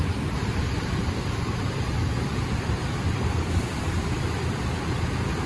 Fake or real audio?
fake